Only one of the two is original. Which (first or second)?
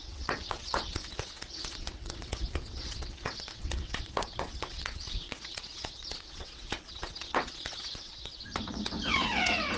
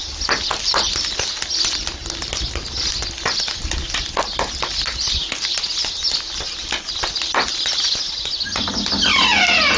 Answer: second